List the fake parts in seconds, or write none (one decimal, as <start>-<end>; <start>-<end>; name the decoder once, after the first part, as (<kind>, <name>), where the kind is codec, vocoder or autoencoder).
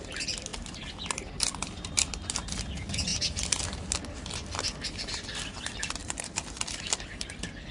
0.0-3.1 (vocoder, BigVGAN v2); 5.0-7.7